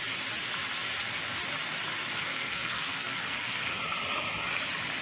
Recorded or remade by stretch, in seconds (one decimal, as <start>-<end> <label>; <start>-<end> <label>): 0.0-2.2 recorded; 2.2-3.8 remade; 3.8-5.0 recorded

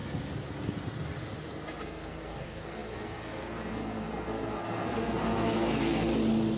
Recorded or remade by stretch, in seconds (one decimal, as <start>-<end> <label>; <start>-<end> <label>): 0.0-1.8 recorded; 1.8-6.1 remade; 6.1-6.6 recorded

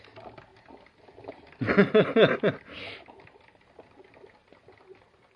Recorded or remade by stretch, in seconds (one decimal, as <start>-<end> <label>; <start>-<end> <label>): 0.0-5.4 recorded

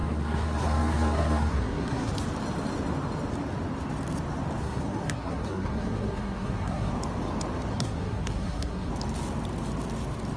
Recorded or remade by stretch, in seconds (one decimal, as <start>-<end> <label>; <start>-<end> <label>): 0.0-2.1 remade; 2.1-4.6 recorded; 4.6-6.9 remade; 6.9-7.7 recorded; 7.7-8.9 remade; 8.9-10.4 recorded

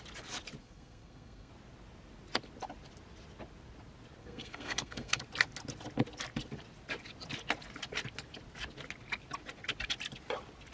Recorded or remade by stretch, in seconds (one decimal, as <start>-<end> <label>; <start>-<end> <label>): 0.0-0.6 recorded; 0.6-1.5 remade; 1.5-4.2 recorded; 4.2-5.2 remade; 5.2-10.7 recorded

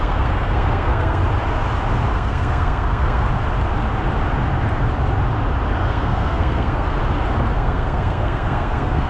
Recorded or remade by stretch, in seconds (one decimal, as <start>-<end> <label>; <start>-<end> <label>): 0.0-1.2 remade; 1.2-2.1 recorded; 2.1-3.3 remade; 3.3-5.8 recorded; 5.8-7.0 remade; 7.0-7.5 recorded; 7.5-9.1 remade